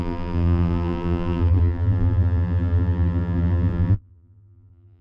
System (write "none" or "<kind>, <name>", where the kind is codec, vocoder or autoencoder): vocoder, BigVGAN v2